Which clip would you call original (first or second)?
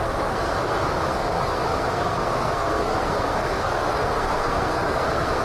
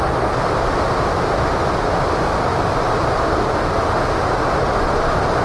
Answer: second